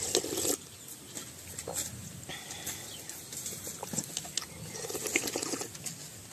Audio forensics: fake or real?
real